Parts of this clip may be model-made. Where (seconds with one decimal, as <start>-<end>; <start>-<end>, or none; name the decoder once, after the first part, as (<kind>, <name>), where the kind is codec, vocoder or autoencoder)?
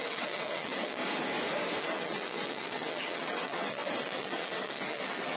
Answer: 0.0-1.0 (vocoder, WaveNeXt); 1.8-5.4